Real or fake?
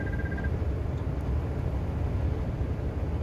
real